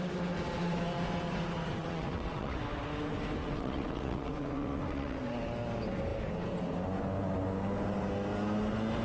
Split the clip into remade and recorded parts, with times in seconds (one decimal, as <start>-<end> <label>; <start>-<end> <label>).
0.0-1.8 recorded; 1.8-2.6 remade; 2.6-3.4 recorded; 3.4-5.2 remade; 5.2-9.0 recorded